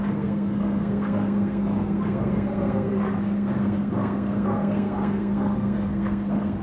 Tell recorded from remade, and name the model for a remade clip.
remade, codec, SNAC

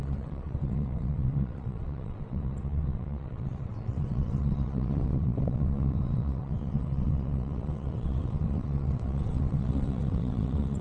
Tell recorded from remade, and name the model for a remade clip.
remade, vocoder, WaveNeXt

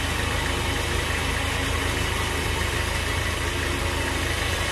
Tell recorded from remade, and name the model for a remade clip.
recorded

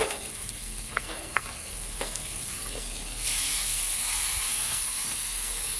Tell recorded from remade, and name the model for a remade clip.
remade, codec, SNAC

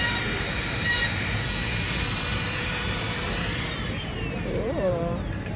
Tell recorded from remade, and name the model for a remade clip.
remade, vocoder, BigVGAN v2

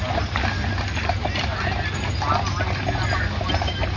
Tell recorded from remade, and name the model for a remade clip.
recorded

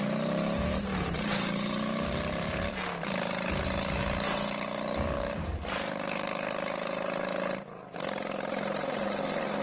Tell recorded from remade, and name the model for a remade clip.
recorded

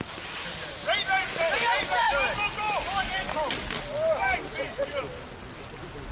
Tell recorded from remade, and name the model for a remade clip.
recorded